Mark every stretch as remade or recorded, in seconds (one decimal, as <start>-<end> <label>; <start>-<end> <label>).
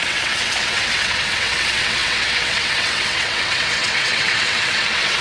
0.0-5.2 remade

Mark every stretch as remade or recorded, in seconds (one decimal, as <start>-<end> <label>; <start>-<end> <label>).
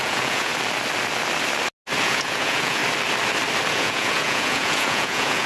0.0-0.5 remade; 0.5-2.0 recorded; 2.0-2.8 remade; 2.8-3.7 recorded; 3.7-5.5 remade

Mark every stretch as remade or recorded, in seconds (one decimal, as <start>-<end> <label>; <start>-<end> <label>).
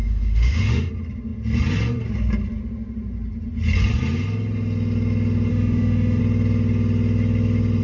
0.0-0.9 remade; 0.9-5.5 recorded; 5.5-6.2 remade; 6.2-7.8 recorded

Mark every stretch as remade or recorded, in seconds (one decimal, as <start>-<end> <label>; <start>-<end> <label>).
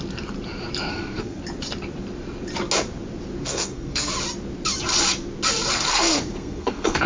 0.0-0.9 recorded; 0.9-1.4 remade; 1.4-3.4 recorded; 3.4-4.1 remade; 4.1-5.9 recorded; 5.9-7.1 remade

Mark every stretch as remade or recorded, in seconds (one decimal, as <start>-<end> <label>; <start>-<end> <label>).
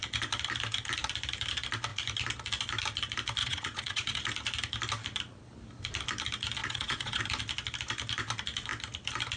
0.0-3.4 recorded; 3.4-4.2 remade; 4.2-6.6 recorded; 6.6-7.2 remade; 7.2-9.4 recorded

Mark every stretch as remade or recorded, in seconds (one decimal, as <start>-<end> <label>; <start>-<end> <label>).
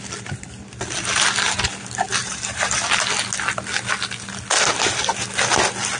0.0-2.2 recorded; 2.2-2.8 remade; 2.8-6.0 recorded